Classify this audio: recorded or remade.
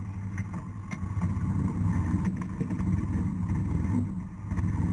recorded